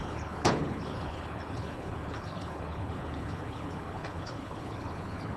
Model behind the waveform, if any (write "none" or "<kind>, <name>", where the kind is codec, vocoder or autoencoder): codec, HILCodec